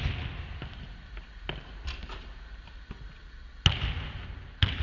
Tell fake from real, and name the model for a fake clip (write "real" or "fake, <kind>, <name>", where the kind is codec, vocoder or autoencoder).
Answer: real